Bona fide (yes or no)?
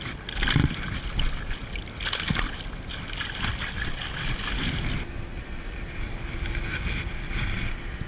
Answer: yes